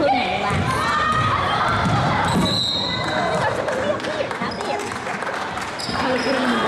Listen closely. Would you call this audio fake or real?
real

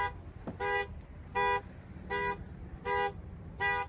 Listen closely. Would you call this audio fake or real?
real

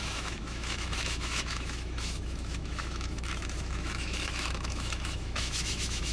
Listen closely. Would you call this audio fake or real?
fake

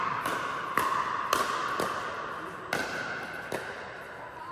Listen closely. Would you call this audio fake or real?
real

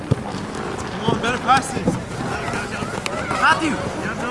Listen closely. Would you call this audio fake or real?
real